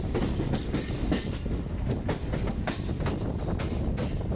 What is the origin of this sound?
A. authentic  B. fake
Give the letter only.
A